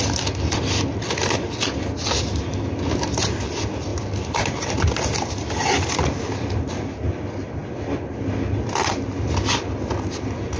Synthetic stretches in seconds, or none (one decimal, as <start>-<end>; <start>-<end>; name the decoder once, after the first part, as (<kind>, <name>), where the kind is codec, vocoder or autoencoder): none